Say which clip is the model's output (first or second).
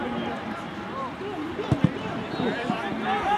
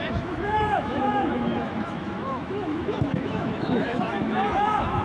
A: second